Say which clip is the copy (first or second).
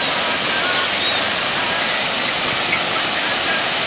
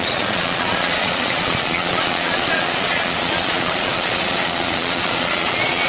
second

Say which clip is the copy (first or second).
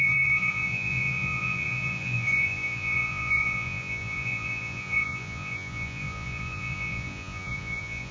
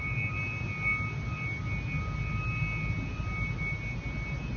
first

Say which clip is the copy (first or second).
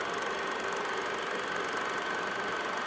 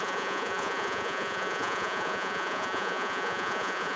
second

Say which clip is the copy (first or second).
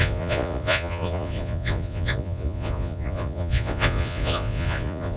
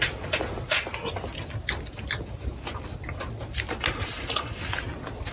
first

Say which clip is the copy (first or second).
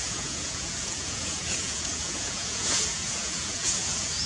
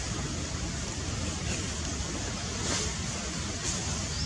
first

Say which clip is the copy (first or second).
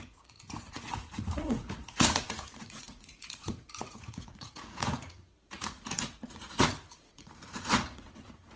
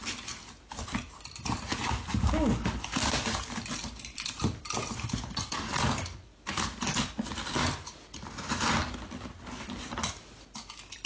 first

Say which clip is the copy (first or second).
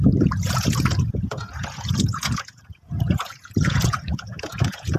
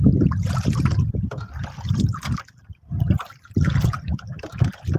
first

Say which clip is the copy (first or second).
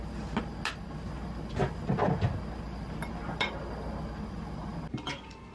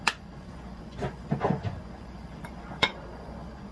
second